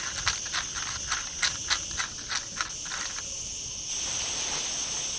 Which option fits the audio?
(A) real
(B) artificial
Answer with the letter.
A